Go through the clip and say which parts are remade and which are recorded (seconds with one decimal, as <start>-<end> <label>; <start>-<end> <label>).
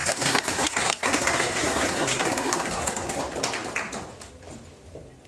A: 0.0-3.2 remade; 3.2-5.3 recorded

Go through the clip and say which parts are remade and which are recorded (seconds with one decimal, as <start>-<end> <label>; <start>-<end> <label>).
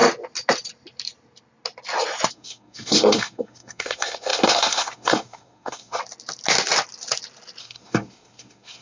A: 0.0-2.3 recorded; 2.3-6.0 remade; 6.0-7.6 recorded; 7.6-8.8 remade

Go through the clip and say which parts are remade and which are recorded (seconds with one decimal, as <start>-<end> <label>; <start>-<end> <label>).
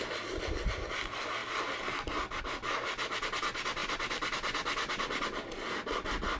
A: 0.0-6.4 recorded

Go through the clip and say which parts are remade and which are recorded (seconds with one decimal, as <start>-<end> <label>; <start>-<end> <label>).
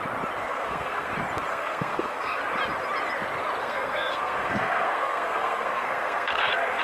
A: 0.0-0.4 recorded; 0.4-1.1 remade; 1.1-1.5 recorded; 1.5-2.4 remade; 2.4-3.6 recorded; 3.6-6.8 remade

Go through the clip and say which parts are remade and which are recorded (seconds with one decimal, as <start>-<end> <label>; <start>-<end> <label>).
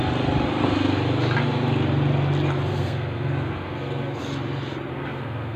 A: 0.0-2.7 recorded; 2.7-4.2 remade; 4.2-4.9 recorded; 4.9-5.6 remade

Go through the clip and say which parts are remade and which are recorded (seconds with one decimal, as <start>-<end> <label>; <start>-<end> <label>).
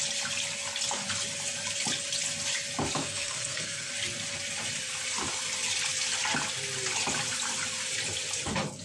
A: 0.0-3.0 recorded; 3.0-3.9 remade; 3.9-8.8 recorded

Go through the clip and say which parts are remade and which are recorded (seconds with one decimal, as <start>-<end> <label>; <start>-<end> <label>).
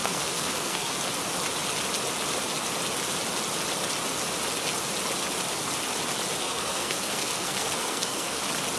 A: 0.0-1.1 remade; 1.1-6.4 recorded; 6.4-8.4 remade; 8.4-8.8 recorded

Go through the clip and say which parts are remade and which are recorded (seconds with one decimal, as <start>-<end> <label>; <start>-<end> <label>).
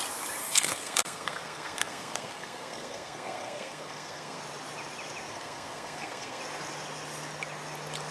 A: 0.0-0.4 recorded; 0.4-4.4 remade; 4.4-5.3 recorded; 5.3-6.4 remade; 6.4-8.1 recorded